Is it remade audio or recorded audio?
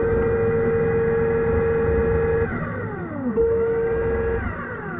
recorded